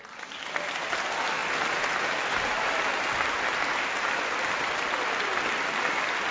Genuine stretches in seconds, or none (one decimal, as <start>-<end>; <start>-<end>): 0.0-6.3